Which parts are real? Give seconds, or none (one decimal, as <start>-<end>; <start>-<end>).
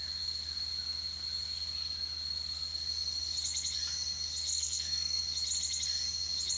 0.0-4.5; 5.2-6.6